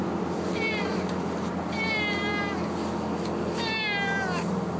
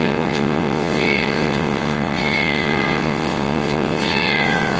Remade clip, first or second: second